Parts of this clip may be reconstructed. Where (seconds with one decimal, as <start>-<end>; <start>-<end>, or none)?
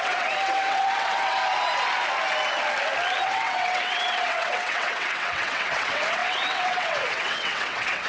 0.0-1.4; 3.2-8.1